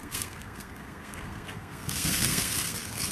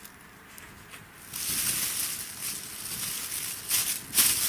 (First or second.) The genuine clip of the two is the second